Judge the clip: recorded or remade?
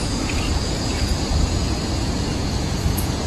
remade